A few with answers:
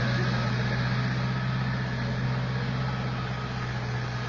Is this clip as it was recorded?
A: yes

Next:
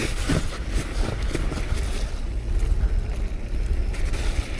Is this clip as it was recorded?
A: yes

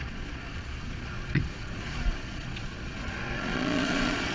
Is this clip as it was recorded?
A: no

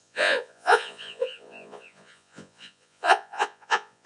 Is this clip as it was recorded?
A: no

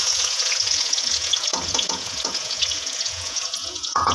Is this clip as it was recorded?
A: no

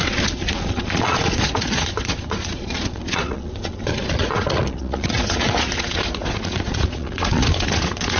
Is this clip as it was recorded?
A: no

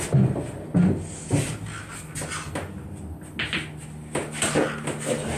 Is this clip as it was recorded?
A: yes